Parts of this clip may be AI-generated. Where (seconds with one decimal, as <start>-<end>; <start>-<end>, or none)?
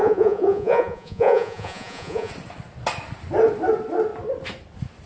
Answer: 0.0-2.3